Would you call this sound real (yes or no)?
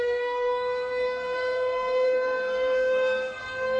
no